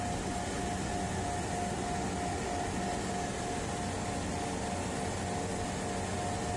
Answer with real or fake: real